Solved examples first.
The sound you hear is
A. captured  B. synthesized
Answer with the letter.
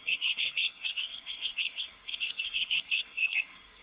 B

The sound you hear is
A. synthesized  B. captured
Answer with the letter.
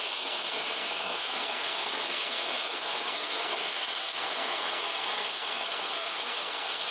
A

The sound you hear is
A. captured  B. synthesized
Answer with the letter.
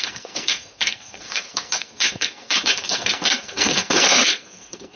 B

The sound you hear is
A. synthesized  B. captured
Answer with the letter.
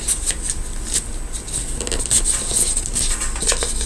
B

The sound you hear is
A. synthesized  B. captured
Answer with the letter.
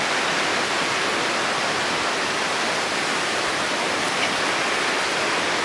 B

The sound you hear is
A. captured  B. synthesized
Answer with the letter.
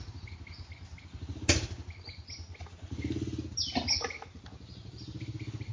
A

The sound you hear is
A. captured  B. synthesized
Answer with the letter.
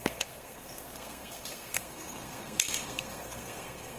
B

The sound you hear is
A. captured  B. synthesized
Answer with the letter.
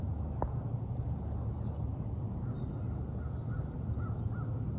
A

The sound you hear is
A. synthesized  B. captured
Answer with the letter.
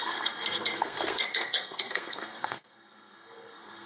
A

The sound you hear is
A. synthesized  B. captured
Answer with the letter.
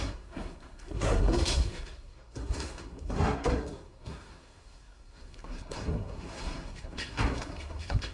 A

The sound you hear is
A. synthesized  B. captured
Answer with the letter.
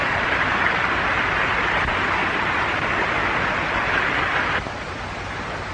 B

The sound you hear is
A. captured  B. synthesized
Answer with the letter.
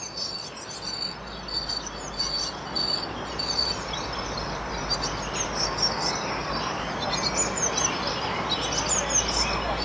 A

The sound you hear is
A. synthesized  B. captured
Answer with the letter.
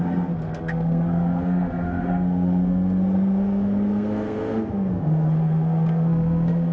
A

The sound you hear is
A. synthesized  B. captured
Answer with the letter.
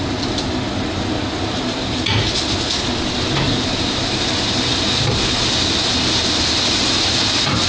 B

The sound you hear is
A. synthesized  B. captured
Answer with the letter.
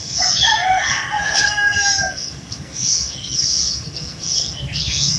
A